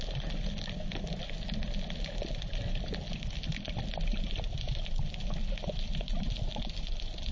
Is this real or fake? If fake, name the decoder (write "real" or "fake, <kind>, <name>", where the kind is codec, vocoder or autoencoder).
real